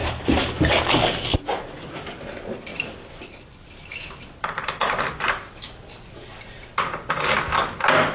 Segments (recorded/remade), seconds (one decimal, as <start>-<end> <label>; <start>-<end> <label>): 0.0-1.6 remade; 1.6-2.7 recorded; 2.7-6.6 remade; 6.6-8.1 recorded